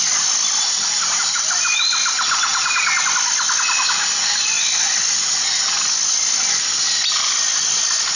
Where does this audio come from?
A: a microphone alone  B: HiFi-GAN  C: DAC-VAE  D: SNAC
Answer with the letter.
A